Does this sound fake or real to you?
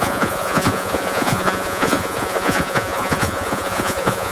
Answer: fake